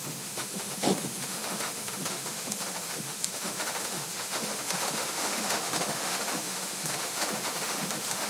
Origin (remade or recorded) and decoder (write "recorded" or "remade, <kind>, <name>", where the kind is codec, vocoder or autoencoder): remade, autoencoder, DAC-VAE